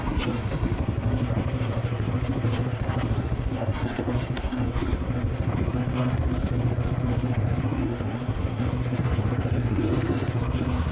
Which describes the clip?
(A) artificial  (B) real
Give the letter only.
A